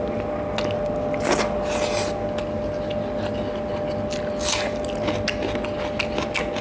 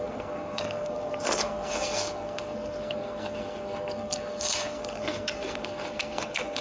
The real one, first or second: first